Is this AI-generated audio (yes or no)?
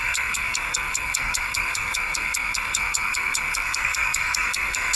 yes